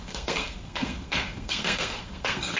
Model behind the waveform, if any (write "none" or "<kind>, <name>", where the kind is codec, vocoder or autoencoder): codec, SNAC